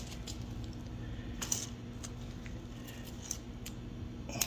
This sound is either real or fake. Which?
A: real